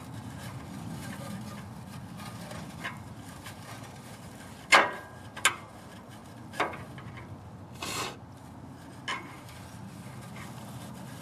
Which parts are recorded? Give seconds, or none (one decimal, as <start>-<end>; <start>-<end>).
0.0-11.2